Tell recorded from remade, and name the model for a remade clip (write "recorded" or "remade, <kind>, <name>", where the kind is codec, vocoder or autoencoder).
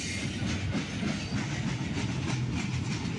recorded